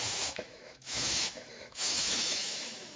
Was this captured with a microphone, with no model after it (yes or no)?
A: no